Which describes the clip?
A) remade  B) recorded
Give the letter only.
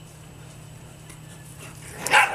A